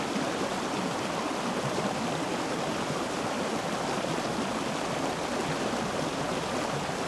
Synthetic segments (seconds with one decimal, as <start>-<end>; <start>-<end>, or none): none

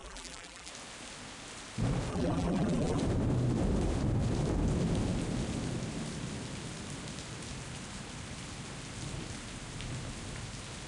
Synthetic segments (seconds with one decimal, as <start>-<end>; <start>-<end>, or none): 0.0-0.7; 2.1-3.0

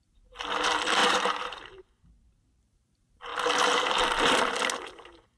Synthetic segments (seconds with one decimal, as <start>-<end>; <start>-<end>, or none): 1.0-2.4

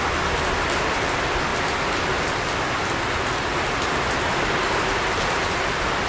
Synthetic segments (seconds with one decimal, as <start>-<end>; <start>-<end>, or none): none

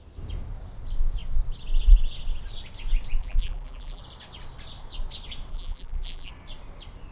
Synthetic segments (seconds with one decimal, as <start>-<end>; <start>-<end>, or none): 3.2-4.0; 5.5-6.3

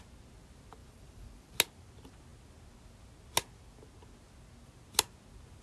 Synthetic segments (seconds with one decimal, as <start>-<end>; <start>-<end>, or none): 0.8-1.5